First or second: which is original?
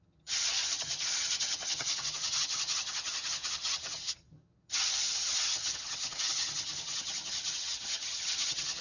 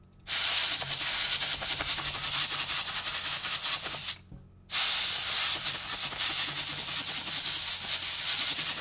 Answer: second